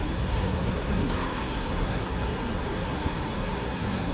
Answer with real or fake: fake